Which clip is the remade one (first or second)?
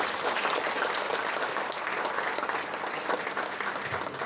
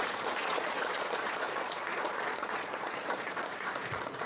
second